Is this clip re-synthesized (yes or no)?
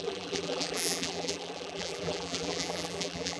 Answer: yes